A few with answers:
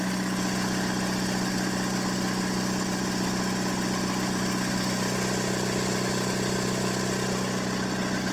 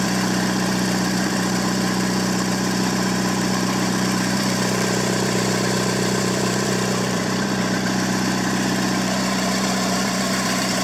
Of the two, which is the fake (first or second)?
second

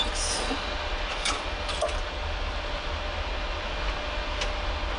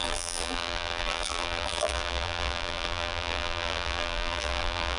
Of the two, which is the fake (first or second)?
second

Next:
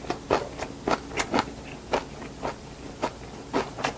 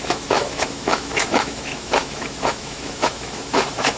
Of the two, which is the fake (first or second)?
second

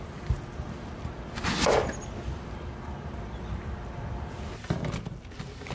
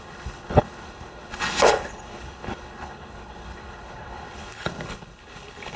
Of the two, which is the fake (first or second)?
second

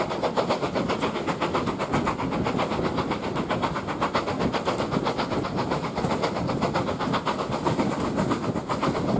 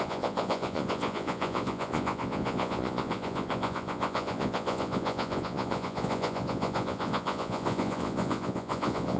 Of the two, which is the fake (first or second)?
second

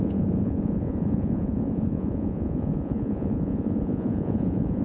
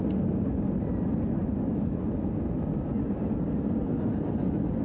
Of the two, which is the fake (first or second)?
first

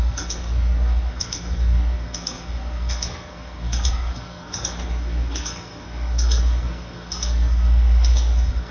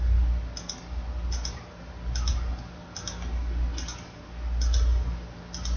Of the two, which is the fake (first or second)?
first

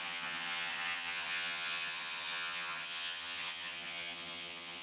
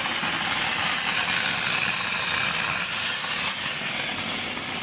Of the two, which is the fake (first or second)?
first